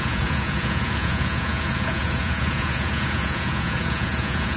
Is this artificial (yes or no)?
yes